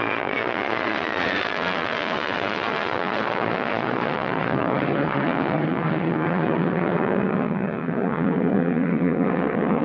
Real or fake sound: fake